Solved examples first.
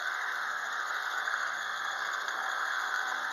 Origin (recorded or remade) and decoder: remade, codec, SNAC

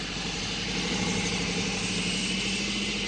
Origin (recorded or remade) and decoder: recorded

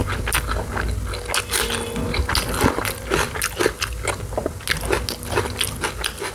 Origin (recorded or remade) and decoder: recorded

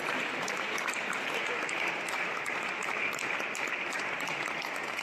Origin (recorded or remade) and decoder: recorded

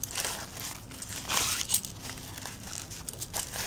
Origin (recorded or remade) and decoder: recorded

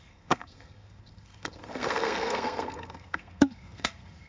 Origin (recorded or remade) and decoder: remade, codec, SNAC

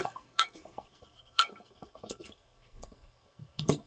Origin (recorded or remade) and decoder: remade, codec, SNAC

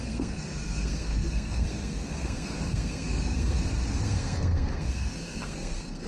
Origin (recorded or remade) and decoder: remade, codec, SNAC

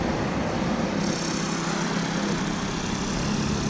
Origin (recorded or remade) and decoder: recorded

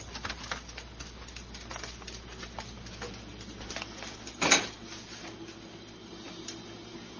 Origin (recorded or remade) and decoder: recorded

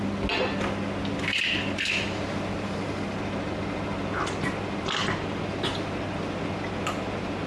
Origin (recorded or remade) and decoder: recorded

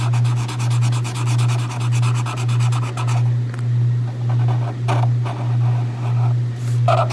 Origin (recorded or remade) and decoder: recorded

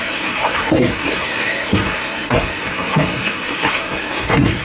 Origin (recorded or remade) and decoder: remade, codec, SNAC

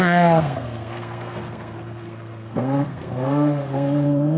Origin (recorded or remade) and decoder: remade, codec, SNAC